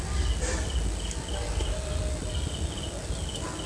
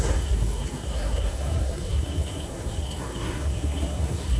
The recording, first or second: first